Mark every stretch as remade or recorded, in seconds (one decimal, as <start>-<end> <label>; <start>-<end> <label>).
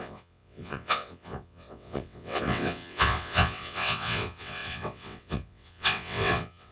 0.0-6.7 remade